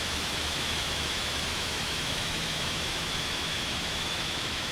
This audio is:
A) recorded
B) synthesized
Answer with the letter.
B